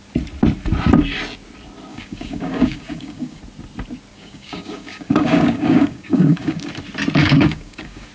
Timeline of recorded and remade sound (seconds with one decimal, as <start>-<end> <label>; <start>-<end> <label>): 0.0-1.9 recorded; 1.9-3.4 remade; 3.4-4.1 recorded; 4.1-6.7 remade; 6.7-7.2 recorded; 7.2-8.1 remade